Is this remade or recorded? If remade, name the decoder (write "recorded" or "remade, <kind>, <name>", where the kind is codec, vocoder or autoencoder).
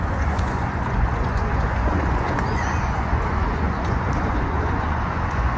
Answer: remade, vocoder, Vocos